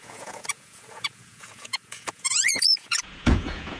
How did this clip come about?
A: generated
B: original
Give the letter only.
A